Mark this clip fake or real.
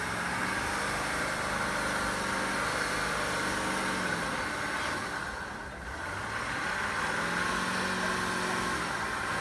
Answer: real